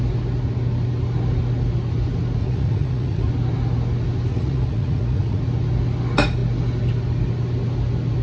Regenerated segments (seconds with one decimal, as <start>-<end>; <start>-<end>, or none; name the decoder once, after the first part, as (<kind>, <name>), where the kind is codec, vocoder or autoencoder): 2.4-3.3 (vocoder, Vocos); 4.3-5.4

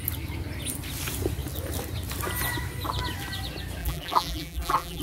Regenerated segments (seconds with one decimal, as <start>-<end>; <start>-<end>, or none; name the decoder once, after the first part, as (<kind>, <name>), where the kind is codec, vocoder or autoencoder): 3.8-5.0 (vocoder, BigVGAN v2)

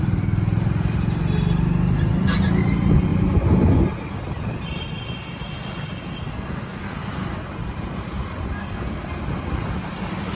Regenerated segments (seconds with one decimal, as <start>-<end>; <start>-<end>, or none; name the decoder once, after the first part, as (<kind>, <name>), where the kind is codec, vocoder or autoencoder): 6.3-6.8 (codec, SNAC); 8.6-9.2

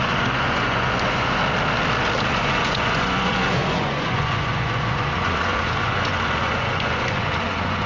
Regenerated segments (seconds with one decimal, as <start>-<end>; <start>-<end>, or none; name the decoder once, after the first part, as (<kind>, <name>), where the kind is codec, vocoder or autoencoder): 0.0-1.4 (vocoder, Vocos); 2.3-7.9

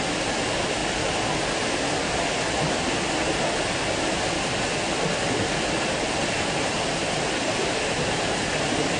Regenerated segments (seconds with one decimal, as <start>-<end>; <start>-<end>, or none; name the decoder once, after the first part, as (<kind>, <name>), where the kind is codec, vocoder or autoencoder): none